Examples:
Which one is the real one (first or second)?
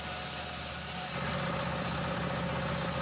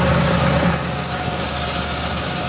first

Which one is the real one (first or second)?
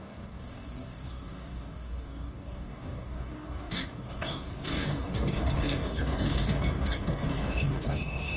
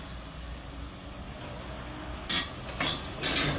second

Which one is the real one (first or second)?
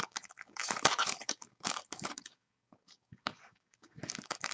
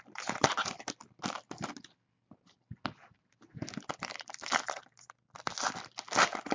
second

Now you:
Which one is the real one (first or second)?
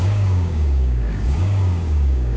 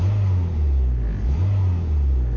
second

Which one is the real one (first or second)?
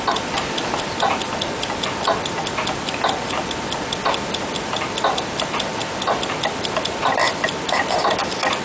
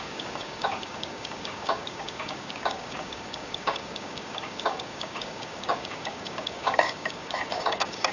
first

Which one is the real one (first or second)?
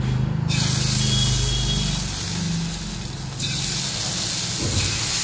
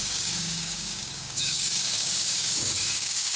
first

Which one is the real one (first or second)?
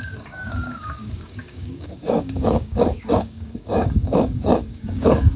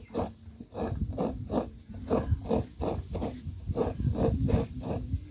second